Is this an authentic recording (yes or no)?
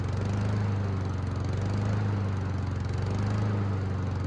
yes